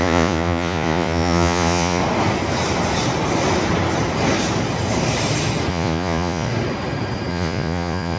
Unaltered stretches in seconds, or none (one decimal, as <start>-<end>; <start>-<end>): 2.0-5.7; 6.5-7.3